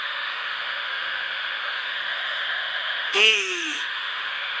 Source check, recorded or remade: remade